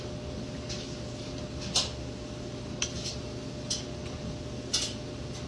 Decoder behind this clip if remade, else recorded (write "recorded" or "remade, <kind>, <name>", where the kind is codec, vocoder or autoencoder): recorded